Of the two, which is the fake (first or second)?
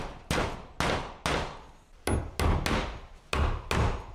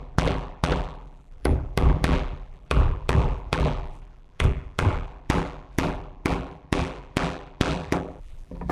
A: second